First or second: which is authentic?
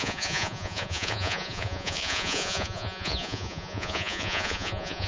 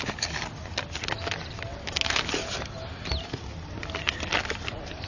second